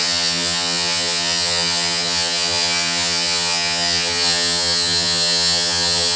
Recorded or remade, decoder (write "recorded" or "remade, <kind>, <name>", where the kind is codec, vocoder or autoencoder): remade, vocoder, HiFi-GAN